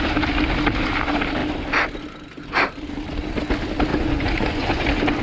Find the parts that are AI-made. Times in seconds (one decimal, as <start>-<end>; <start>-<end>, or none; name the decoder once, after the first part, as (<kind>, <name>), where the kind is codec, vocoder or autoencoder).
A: 3.9-4.8 (vocoder, Vocos)

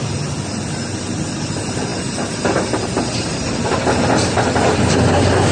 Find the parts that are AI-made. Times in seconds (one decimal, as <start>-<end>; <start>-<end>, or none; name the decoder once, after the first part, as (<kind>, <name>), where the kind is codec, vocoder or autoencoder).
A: none

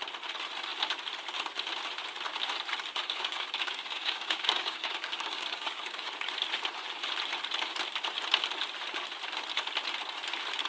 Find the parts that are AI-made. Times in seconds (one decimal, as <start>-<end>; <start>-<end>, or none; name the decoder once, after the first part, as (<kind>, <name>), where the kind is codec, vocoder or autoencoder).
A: 3.0-6.1 (codec, DAC)